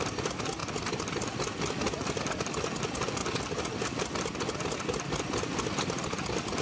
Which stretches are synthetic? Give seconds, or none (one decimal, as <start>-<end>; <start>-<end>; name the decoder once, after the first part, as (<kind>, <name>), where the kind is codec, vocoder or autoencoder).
none